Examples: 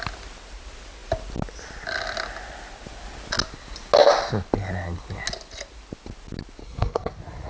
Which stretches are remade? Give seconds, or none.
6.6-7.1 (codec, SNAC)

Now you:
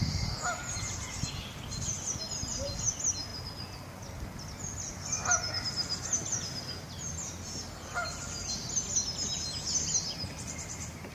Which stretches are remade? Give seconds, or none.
none

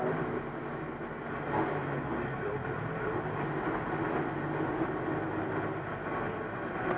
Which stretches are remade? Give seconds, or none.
none